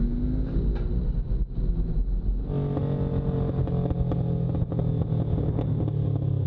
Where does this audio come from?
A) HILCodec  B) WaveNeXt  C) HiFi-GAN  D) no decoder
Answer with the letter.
D